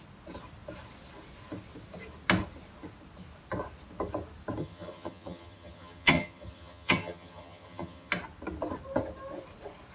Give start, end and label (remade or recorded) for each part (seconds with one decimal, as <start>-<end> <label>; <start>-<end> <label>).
0.0-4.6 recorded; 4.6-8.1 remade; 8.1-9.9 recorded